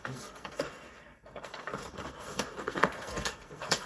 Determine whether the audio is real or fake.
fake